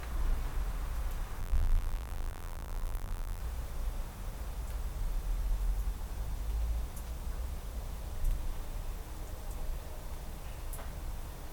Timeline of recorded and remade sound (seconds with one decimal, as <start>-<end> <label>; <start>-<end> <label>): 0.0-1.4 recorded; 1.4-3.4 remade; 3.4-11.5 recorded